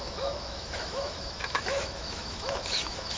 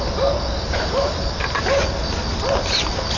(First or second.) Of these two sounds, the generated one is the first